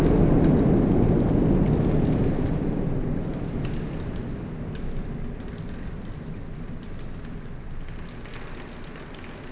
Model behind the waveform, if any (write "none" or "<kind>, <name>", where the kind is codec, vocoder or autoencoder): none